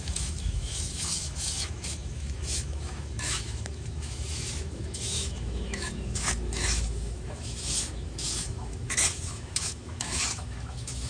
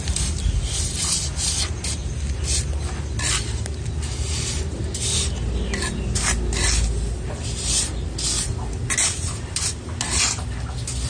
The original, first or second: second